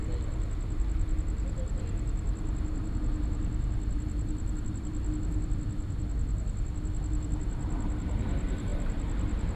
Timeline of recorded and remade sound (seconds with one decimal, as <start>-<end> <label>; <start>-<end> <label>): 0.0-9.6 recorded